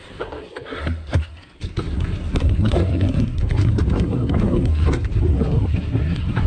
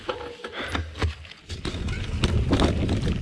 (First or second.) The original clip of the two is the second